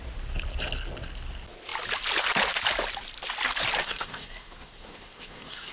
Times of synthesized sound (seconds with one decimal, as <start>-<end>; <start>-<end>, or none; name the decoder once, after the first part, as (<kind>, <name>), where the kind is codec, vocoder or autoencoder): 3.8-5.7 (codec, SNAC)

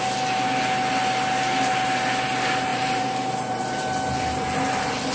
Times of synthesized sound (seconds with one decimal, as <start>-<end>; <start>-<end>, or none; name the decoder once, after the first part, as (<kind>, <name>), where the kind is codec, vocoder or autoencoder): 2.7-3.8 (vocoder, BigVGAN v2)

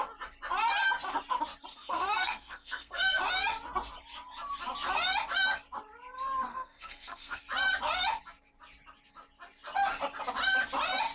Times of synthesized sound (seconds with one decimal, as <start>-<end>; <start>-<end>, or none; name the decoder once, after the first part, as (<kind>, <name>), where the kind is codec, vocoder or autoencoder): 1.7-3.2 (codec, SNAC); 6.5-7.4

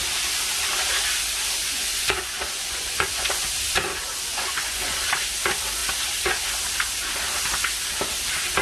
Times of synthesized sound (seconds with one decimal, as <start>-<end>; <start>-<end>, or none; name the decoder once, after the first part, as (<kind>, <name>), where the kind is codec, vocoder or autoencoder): 1.6-3.5 (vocoder, Vocos); 4.3-5.0

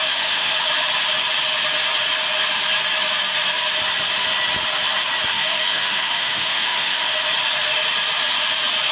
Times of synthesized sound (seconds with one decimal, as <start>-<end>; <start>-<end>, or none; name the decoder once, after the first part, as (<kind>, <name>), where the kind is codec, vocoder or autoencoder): 0.0-0.7 (autoencoder, DAC-VAE); 5.3-7.1